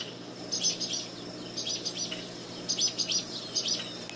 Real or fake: real